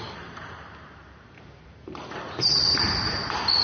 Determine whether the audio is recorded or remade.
remade